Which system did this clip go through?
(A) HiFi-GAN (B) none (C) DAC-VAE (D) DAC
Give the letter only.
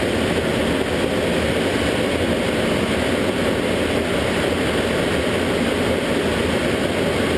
B